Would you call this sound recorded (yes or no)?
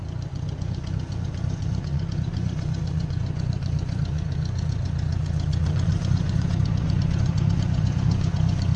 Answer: no